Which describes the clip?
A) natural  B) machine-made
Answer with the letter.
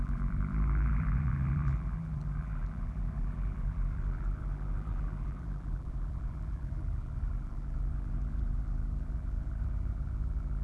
B